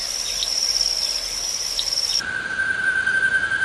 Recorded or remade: recorded